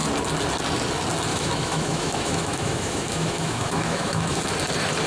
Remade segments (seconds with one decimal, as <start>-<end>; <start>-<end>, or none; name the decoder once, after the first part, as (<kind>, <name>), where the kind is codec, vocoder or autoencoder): 1.3-4.4 (autoencoder, DAC-VAE)